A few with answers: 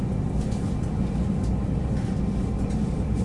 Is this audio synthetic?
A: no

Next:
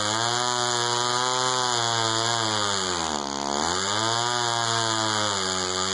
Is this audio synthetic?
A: no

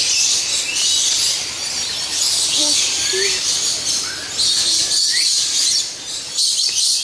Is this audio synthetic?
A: no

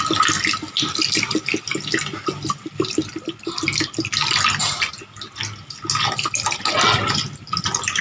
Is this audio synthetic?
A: no